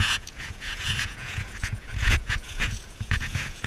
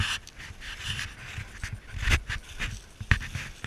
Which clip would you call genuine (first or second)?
second